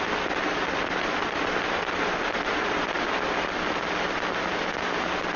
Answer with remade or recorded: recorded